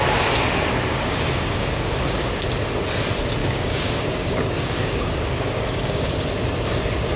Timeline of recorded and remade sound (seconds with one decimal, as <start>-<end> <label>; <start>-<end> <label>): 0.0-0.9 recorded; 0.9-1.9 remade; 1.9-3.4 recorded; 3.4-6.1 remade; 6.1-7.2 recorded